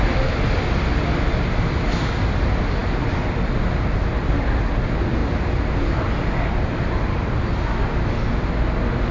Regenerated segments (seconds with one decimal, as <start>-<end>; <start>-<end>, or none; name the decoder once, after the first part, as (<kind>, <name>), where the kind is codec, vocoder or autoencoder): none